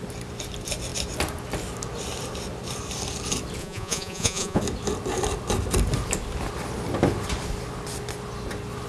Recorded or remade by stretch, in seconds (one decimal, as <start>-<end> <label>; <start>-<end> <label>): 0.0-3.6 recorded; 3.6-4.6 remade; 4.6-8.9 recorded